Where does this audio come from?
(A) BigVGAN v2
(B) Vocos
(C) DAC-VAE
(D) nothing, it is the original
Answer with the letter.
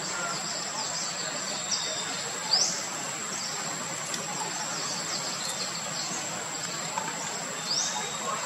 D